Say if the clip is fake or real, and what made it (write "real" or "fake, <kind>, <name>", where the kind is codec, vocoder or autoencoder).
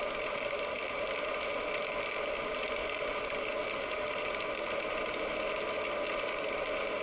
real